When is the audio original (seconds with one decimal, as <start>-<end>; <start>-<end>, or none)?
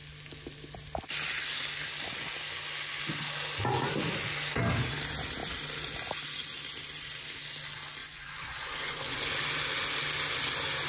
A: 0.0-8.0; 9.3-10.9